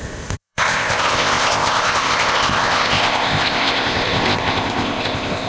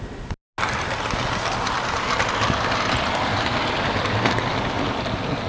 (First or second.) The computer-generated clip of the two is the first